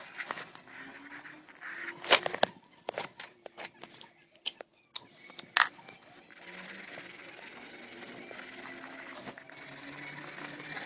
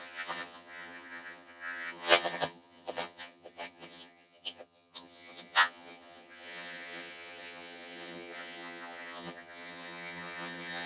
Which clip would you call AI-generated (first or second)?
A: second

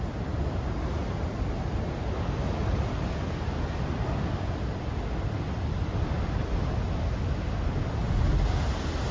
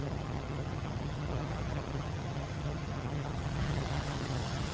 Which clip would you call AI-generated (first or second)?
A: second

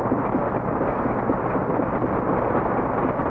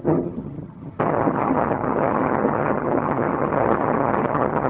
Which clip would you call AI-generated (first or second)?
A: second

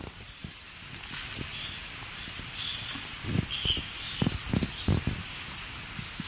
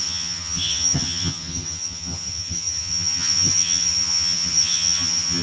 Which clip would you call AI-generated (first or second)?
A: second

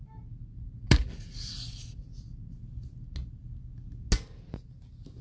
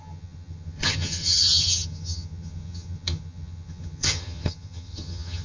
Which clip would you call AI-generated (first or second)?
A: second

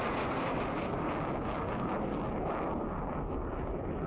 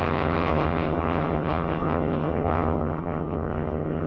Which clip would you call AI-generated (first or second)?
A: second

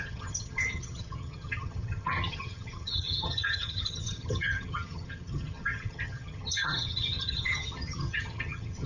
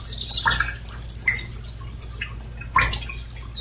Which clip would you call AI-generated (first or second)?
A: first